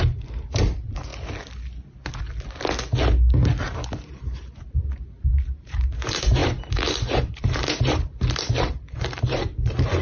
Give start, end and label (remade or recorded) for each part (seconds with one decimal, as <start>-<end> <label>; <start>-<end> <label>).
0.0-1.1 remade; 1.1-3.6 recorded; 3.6-10.0 remade